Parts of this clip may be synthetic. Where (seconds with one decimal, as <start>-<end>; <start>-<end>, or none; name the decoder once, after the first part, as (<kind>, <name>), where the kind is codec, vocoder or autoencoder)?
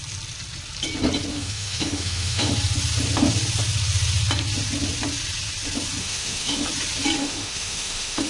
1.3-2.5 (autoencoder, DAC-VAE); 6.0-6.6; 7.2-8.3